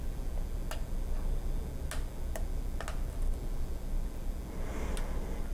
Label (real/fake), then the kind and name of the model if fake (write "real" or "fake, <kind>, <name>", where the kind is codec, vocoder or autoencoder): real